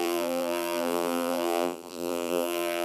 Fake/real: fake